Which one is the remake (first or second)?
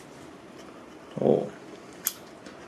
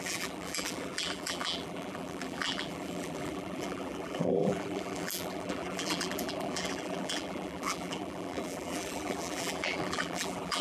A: second